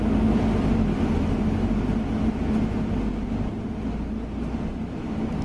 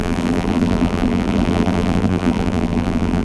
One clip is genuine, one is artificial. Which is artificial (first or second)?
second